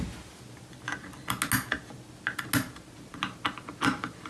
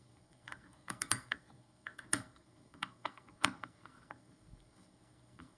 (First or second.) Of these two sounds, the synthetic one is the second